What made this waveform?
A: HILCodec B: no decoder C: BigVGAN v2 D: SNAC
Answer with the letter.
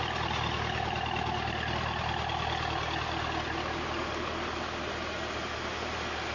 B